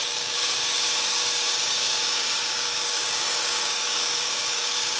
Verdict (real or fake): fake